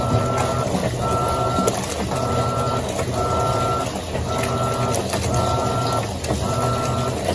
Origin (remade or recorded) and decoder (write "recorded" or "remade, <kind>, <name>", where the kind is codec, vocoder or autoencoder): recorded